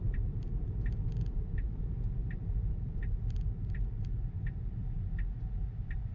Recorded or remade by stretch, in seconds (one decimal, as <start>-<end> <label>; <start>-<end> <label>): 0.0-1.8 remade; 1.8-2.2 recorded; 2.2-6.1 remade